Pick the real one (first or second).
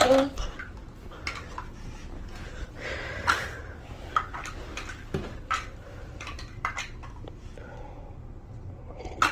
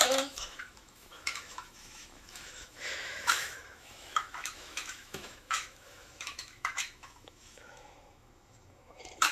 first